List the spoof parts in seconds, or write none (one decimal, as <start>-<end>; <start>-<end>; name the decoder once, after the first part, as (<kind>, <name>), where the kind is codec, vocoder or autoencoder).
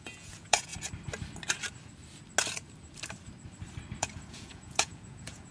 0.0-0.7 (vocoder, Vocos); 4.0-5.5